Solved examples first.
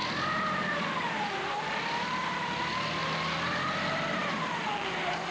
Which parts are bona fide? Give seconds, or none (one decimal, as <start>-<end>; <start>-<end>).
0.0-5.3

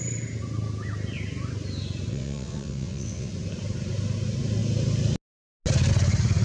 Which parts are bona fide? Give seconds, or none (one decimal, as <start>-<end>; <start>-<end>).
0.0-2.1; 3.3-6.4

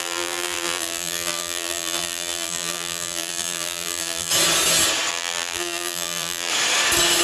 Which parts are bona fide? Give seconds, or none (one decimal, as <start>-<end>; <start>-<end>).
4.3-5.1; 6.5-7.2